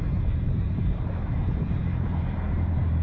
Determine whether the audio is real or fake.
fake